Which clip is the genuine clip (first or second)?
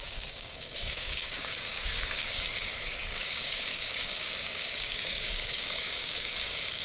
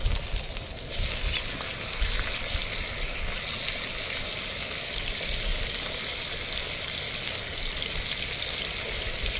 second